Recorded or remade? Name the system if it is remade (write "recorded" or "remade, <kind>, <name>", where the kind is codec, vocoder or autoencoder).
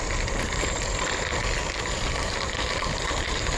recorded